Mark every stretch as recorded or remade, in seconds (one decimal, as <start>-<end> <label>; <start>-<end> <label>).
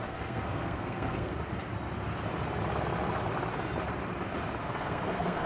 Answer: 0.0-1.3 remade; 1.3-4.6 recorded; 4.6-5.5 remade